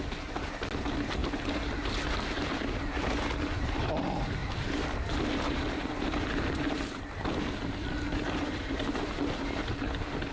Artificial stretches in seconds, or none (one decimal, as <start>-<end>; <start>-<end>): 4.4-7.0